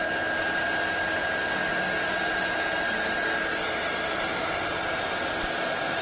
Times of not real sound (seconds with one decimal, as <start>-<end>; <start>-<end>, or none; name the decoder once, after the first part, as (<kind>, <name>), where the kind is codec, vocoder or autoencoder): none